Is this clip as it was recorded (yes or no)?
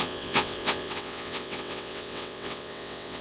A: no